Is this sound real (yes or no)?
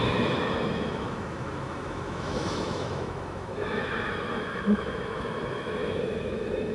no